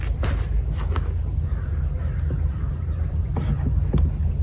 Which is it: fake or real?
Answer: real